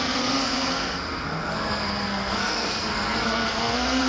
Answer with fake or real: fake